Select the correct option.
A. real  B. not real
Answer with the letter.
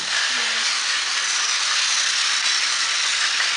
A